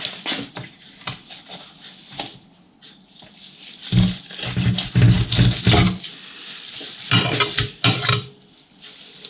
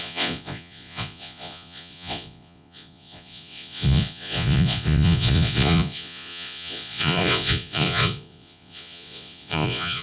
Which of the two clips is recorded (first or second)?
first